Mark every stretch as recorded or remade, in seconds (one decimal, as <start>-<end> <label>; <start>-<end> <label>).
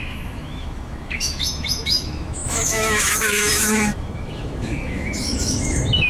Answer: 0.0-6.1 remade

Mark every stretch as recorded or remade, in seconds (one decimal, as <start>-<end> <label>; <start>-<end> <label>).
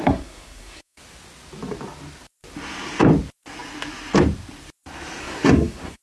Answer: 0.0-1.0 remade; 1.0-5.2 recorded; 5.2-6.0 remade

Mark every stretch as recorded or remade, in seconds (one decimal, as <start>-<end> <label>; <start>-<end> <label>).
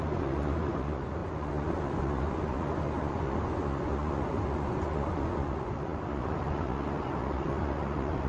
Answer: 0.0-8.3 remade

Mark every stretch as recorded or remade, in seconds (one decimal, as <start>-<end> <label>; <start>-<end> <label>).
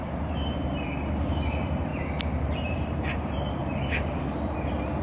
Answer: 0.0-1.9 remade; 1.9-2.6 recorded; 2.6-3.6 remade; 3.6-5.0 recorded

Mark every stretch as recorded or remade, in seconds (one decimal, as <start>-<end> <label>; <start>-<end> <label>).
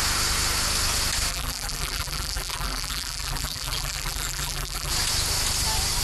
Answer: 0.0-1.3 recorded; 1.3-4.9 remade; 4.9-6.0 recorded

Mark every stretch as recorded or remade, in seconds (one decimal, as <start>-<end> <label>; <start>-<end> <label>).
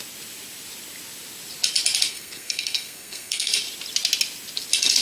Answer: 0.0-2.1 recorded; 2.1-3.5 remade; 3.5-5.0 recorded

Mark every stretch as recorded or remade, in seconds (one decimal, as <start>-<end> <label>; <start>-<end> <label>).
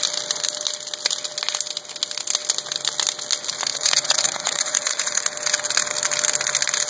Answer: 0.0-3.7 recorded; 3.7-5.2 remade; 5.2-6.9 recorded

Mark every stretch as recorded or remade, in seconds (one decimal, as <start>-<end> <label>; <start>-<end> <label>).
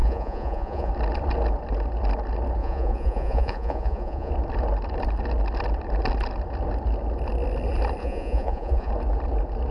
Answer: 0.0-0.9 remade; 0.9-2.6 recorded; 2.6-4.3 remade; 4.3-8.0 recorded; 8.0-8.9 remade; 8.9-9.7 recorded